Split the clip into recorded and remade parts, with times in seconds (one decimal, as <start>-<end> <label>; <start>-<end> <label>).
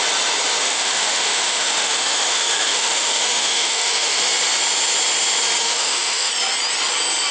0.0-0.6 recorded; 0.6-4.2 remade; 4.2-5.6 recorded; 5.6-6.3 remade; 6.3-7.3 recorded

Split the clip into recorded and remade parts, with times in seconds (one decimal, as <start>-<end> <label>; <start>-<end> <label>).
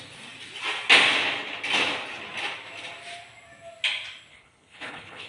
0.0-4.3 recorded; 4.3-5.3 remade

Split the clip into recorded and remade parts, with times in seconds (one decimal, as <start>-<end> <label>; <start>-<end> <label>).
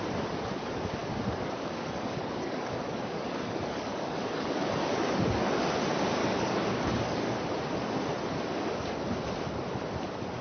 0.0-1.0 recorded; 1.0-5.6 remade; 5.6-6.2 recorded; 6.2-7.2 remade; 7.2-10.4 recorded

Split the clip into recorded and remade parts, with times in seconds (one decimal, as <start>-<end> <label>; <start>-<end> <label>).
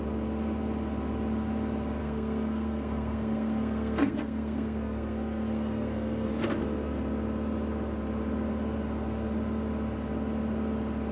0.0-2.0 recorded; 2.0-6.3 remade; 6.3-11.1 recorded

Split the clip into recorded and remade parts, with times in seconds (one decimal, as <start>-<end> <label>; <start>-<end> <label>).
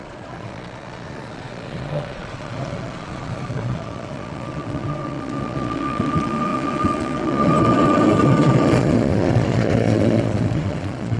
0.0-11.2 remade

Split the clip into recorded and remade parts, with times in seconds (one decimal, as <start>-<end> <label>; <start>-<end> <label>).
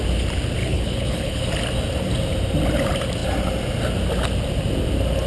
0.0-0.6 recorded; 0.6-1.5 remade; 1.5-5.3 recorded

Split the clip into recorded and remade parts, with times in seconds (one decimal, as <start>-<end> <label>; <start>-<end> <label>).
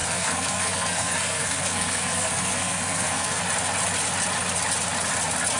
0.0-3.4 remade; 3.4-5.6 recorded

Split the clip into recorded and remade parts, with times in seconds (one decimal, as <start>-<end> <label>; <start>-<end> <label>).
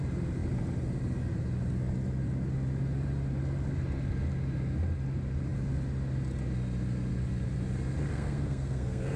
0.0-8.1 recorded; 8.1-9.2 remade